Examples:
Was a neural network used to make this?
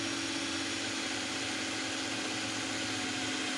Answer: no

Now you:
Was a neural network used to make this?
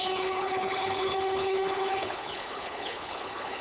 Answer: yes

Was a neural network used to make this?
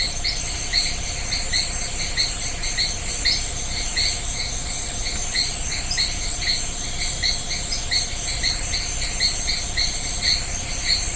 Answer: no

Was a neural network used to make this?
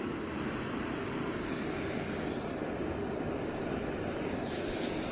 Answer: no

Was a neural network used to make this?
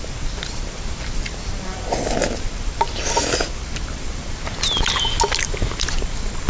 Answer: no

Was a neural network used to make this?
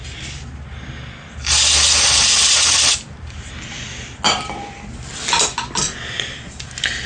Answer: no